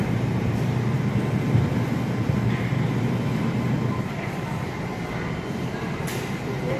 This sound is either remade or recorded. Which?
remade